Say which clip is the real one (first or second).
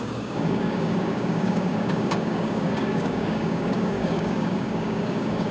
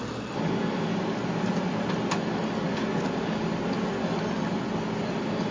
second